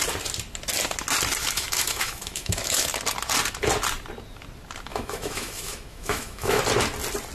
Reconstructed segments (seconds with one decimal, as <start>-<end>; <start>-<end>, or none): 1.4-2.9; 4.9-6.6